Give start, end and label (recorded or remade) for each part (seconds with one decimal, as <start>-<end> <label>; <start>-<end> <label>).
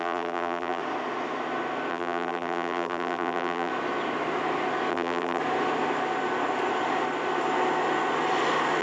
0.0-0.8 remade; 0.8-1.9 recorded; 1.9-3.7 remade; 3.7-4.9 recorded; 4.9-5.4 remade; 5.4-8.8 recorded